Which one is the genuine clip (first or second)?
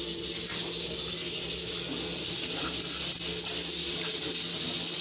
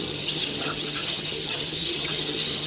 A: first